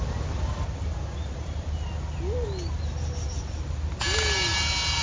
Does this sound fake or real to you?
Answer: real